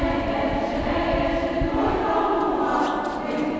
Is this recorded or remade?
recorded